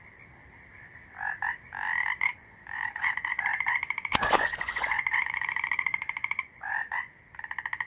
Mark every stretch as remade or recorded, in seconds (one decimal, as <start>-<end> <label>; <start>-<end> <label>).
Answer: 0.0-2.4 recorded; 2.4-7.1 remade; 7.1-7.9 recorded